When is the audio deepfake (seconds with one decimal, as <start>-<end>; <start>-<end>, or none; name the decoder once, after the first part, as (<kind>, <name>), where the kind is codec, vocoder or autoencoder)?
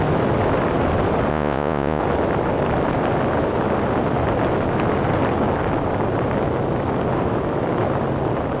1.3-2.0 (vocoder, Vocos)